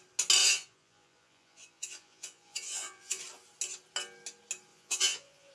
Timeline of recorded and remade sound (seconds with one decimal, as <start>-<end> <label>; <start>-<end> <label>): 0.0-0.4 recorded; 0.4-3.2 remade; 3.2-4.7 recorded; 4.7-5.5 remade